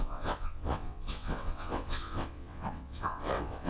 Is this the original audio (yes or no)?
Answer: no